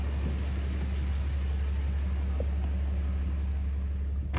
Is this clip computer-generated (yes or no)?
no